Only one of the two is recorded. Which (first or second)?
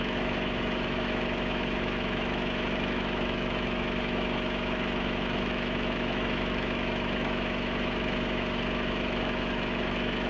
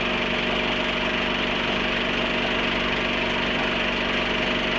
second